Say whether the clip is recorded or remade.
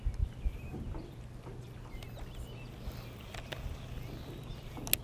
recorded